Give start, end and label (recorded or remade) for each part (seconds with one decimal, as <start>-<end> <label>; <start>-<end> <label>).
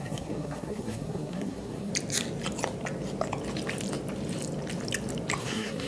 0.0-1.9 remade; 1.9-5.4 recorded; 5.4-5.9 remade